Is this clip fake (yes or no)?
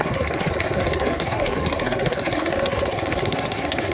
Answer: yes